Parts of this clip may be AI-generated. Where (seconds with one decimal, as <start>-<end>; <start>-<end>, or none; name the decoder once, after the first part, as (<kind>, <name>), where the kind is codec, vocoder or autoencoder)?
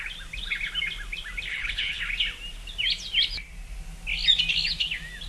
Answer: 1.5-2.0 (codec, HILCodec)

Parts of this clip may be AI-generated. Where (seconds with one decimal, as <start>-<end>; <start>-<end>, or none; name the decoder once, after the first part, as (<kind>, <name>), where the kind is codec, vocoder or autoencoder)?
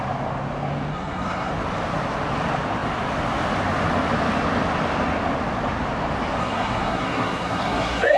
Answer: 0.9-1.5 (codec, SNAC); 6.4-8.2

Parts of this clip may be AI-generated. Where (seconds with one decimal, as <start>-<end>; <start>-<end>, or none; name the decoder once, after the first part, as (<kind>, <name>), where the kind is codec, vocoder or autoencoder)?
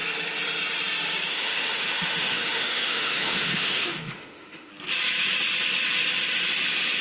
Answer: 1.3-4.7 (autoencoder, DAC-VAE)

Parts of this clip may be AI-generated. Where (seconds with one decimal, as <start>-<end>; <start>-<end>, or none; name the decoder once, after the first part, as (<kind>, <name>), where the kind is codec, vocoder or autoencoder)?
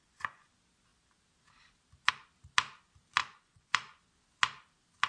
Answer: 0.0-0.5 (vocoder, Vocos); 3.2-4.0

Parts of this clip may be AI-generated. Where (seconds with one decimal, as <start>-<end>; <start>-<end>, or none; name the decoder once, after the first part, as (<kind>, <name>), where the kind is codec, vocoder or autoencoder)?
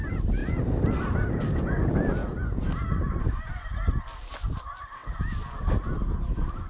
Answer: none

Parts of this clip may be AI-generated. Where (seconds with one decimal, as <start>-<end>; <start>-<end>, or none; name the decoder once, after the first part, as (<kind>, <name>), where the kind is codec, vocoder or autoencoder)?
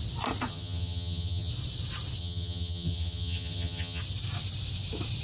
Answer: 0.5-1.5 (vocoder, HiFi-GAN); 2.2-4.0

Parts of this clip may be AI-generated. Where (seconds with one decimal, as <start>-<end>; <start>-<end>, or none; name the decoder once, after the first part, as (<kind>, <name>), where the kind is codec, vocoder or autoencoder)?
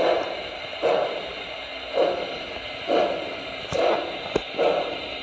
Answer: none